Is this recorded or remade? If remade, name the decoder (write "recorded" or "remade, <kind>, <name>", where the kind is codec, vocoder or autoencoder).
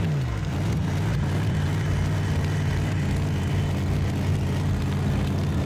recorded